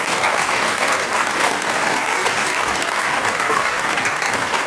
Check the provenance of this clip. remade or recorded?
remade